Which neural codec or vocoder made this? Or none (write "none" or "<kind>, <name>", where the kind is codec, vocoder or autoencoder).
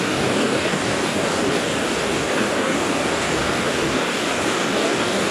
codec, DAC